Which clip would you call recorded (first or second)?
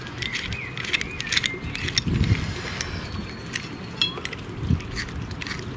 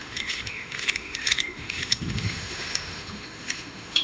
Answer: first